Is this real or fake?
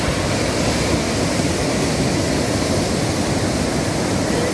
real